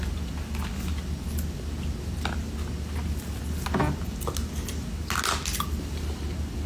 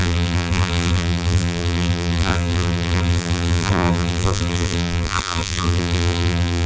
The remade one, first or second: second